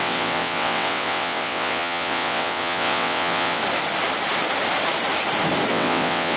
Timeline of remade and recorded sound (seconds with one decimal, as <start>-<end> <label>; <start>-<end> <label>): 0.0-3.6 remade; 3.6-5.7 recorded; 5.7-6.4 remade